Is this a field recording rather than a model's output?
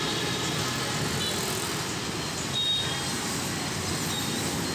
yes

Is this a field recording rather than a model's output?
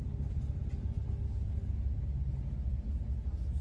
yes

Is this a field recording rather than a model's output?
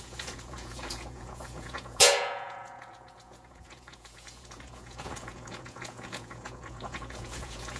no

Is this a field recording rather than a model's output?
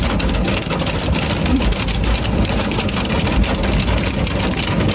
yes